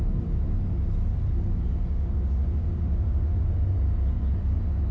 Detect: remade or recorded recorded